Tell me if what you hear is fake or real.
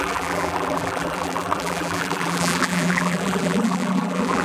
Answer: fake